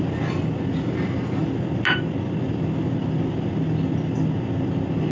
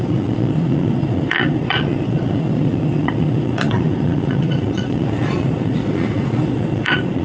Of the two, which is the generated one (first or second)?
second